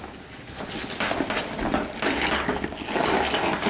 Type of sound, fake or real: real